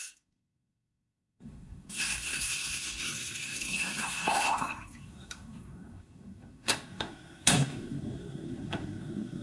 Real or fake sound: fake